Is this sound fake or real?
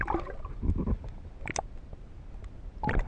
real